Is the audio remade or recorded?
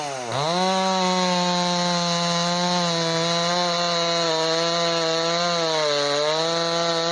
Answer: recorded